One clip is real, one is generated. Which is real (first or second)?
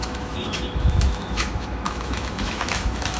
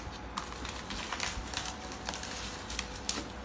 second